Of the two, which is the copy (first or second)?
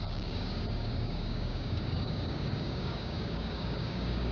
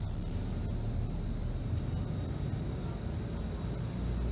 first